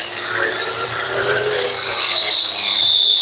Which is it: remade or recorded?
remade